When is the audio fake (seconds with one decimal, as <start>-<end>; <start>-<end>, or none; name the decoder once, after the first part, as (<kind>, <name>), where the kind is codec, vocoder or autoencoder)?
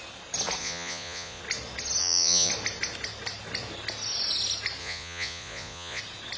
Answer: 0.6-1.4 (vocoder, Vocos); 2.0-2.5; 4.8-6.0